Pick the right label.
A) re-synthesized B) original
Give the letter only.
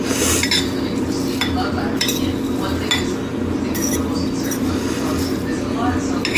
B